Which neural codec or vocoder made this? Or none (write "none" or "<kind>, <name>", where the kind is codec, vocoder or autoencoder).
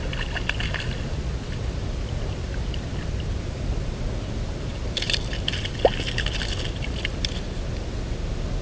none